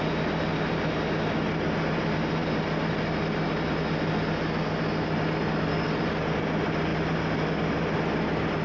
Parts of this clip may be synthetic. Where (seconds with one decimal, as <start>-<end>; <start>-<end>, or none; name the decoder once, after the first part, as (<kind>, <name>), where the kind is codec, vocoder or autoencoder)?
none